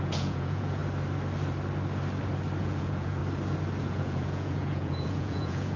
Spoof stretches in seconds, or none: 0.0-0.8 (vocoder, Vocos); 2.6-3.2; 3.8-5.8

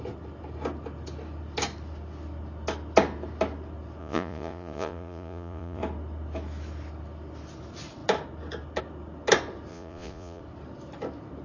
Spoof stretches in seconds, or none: 4.0-5.8 (vocoder, Vocos); 9.7-10.4

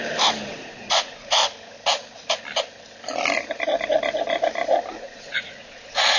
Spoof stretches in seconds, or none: 0.5-1.4 (vocoder, Vocos); 4.9-6.2

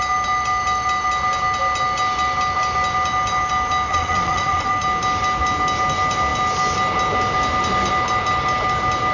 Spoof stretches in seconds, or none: 3.9-4.7 (vocoder, Vocos)

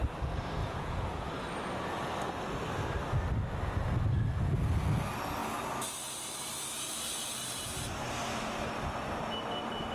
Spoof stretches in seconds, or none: 0.6-1.3 (vocoder, Vocos)